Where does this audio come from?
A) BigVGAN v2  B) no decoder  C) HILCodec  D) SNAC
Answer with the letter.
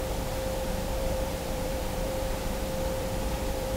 A